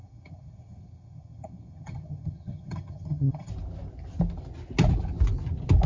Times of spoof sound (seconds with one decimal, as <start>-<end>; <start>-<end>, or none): 0.0-3.5